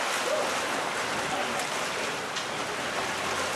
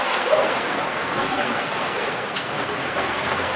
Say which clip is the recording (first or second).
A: first